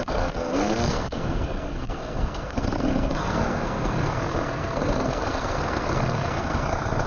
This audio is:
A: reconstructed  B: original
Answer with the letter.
A